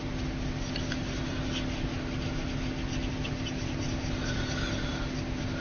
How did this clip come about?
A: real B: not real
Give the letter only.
A